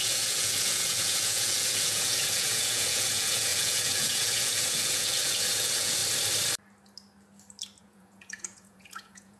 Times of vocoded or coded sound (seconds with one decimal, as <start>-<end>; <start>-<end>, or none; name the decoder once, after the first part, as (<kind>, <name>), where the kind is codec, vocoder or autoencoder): 0.0-6.0 (vocoder, Vocos); 7.8-9.4